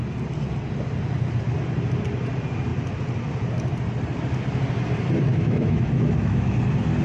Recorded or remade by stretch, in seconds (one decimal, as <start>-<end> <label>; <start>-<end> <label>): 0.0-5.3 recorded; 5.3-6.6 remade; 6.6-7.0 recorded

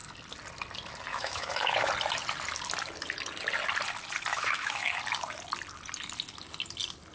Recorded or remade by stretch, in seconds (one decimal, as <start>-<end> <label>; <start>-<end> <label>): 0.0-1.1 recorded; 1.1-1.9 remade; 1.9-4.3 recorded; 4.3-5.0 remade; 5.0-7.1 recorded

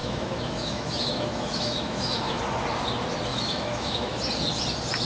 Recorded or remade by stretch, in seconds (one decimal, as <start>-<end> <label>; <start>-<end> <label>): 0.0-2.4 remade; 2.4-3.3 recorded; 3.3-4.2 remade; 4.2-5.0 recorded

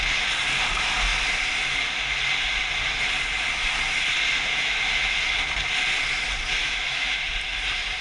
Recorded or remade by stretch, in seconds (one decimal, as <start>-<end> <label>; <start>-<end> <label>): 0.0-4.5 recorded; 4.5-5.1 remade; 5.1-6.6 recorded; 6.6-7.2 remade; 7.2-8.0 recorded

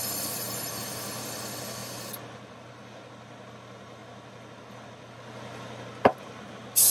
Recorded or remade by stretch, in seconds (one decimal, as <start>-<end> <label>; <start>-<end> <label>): 0.0-6.9 recorded

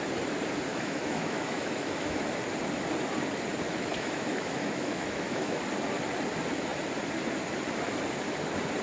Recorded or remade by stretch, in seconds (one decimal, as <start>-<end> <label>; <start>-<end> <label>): 0.0-0.7 recorded; 0.7-2.2 remade; 2.2-3.9 recorded; 3.9-5.6 remade; 5.6-8.8 recorded